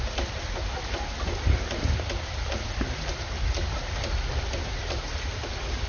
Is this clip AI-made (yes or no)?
no